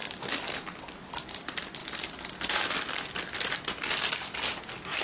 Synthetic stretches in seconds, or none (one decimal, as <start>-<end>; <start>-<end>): none